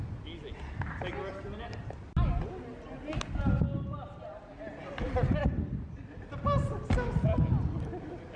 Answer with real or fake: real